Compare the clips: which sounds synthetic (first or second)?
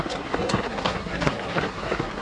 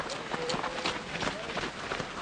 first